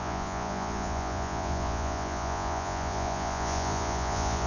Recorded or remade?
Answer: remade